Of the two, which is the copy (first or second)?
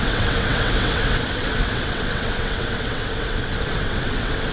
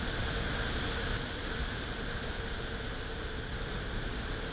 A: first